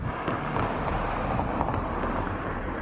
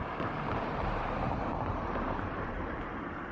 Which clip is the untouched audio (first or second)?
first